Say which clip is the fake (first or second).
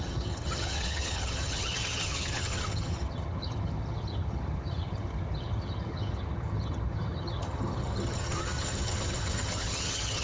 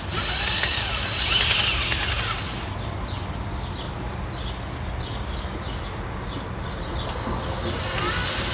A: first